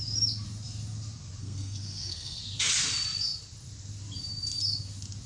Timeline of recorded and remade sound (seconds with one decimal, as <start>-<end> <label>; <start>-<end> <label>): 0.0-1.4 recorded; 1.4-2.4 remade; 2.4-5.3 recorded